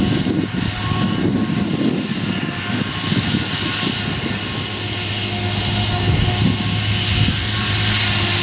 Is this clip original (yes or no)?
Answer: yes